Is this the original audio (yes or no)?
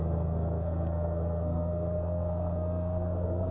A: no